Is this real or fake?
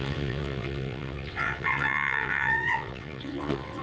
fake